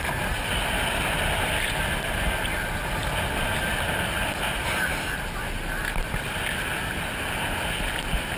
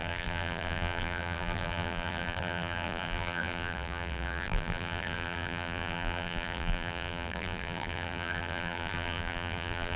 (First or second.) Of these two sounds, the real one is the first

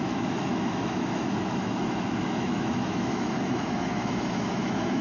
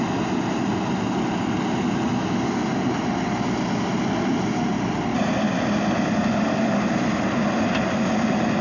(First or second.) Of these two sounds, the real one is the second